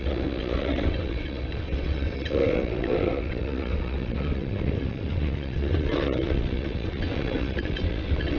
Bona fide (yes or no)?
no